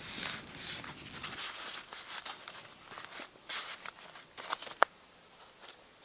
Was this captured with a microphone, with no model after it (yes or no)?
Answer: yes